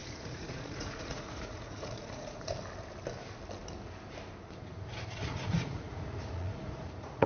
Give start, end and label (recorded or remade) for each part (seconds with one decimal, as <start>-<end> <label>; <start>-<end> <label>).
0.0-2.5 remade; 2.5-5.2 recorded; 5.2-7.3 remade